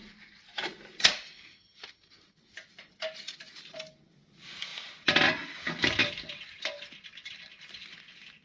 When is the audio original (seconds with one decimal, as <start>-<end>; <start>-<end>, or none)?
0.0-8.4